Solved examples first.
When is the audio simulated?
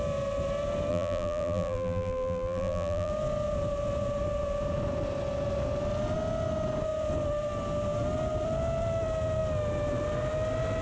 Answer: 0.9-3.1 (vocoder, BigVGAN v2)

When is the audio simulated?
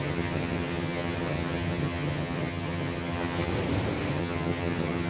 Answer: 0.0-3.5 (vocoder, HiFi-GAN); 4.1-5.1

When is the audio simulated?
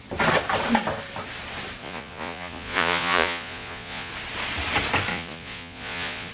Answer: 1.8-4.1 (vocoder, Vocos); 5.1-6.3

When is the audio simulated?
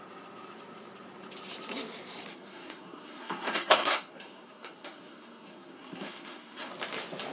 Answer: 2.3-6.7 (codec, SNAC)